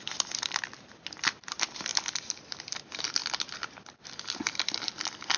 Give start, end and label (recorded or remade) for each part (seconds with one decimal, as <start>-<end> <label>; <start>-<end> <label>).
0.0-1.9 remade; 1.9-2.8 recorded; 2.8-3.2 remade; 3.2-4.4 recorded; 4.4-5.4 remade